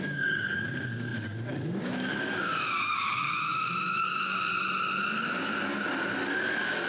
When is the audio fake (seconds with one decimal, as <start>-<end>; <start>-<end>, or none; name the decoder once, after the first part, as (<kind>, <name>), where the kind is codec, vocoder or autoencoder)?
0.0-4.5 (codec, DAC)